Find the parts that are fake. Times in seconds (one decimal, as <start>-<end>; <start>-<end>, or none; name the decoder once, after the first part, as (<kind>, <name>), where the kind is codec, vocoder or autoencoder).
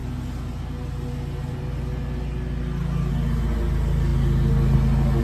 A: none